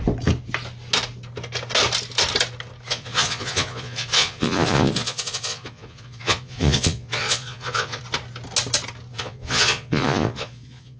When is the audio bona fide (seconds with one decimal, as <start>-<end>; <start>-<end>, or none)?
0.0-2.9; 8.0-9.1